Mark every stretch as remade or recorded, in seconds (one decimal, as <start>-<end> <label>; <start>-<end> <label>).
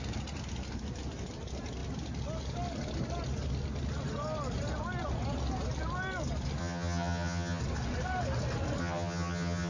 0.0-6.6 recorded; 6.6-7.6 remade; 7.6-8.8 recorded; 8.8-9.7 remade